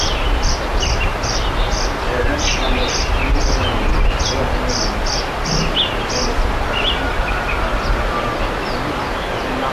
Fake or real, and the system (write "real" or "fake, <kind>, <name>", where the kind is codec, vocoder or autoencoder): real